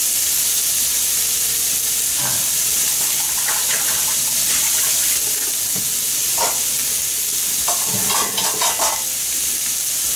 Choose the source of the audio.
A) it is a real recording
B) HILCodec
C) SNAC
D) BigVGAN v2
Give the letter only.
A